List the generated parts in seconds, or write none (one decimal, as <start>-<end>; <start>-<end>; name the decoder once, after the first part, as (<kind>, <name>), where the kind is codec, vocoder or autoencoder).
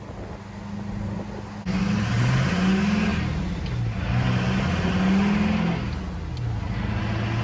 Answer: none